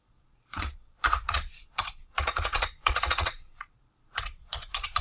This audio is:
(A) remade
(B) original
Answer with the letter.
A